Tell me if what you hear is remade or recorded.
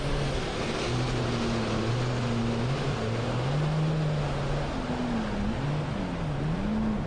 recorded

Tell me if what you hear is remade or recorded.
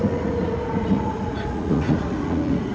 remade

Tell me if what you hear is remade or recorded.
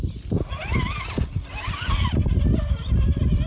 recorded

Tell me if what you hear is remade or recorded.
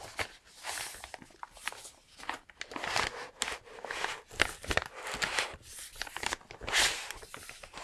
recorded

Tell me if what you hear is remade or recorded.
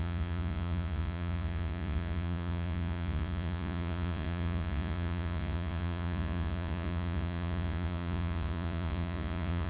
remade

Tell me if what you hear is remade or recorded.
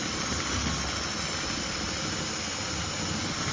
recorded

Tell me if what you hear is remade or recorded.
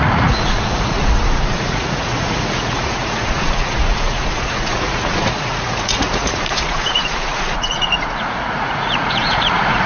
remade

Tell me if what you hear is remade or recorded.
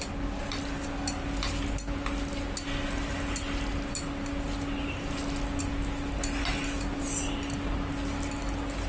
recorded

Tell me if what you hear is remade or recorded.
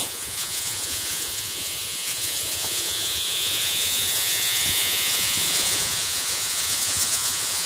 remade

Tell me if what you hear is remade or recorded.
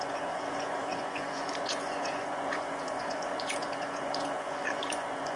remade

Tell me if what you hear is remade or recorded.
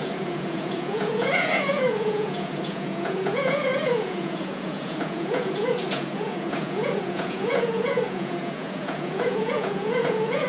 remade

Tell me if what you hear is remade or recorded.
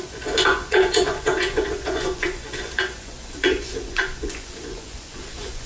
remade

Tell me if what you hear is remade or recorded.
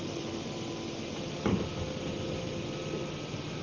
recorded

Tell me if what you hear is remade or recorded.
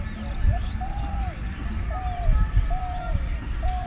recorded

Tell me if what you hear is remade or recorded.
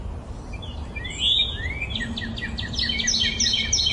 recorded